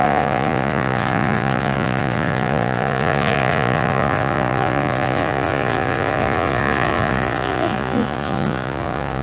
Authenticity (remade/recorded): remade